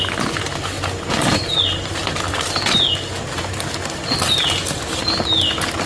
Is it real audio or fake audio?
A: real